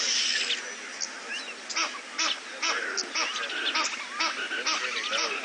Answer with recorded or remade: recorded